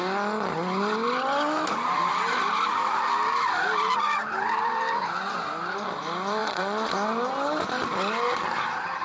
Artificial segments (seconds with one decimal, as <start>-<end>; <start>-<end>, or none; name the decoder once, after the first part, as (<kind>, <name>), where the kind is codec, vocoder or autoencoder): 6.4-6.9 (vocoder, Vocos)